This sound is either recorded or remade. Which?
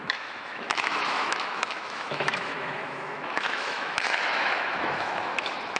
remade